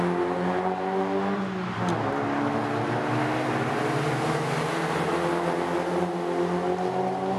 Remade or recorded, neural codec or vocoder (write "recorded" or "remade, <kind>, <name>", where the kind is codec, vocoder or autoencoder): recorded